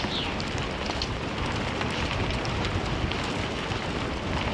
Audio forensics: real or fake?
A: real